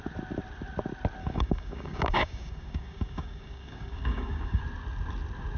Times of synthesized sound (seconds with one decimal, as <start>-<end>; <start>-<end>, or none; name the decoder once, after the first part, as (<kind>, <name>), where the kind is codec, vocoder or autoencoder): 1.2-4.6 (codec, DAC)